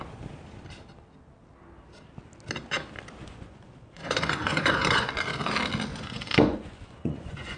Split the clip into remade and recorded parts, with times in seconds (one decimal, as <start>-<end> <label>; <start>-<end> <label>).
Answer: 0.0-3.2 recorded; 3.2-5.1 remade; 5.1-5.9 recorded; 5.9-7.6 remade